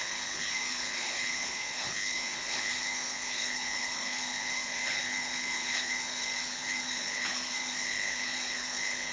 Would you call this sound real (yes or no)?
no